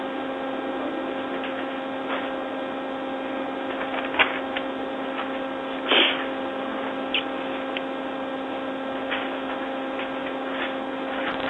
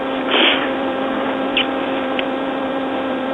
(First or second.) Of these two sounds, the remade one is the second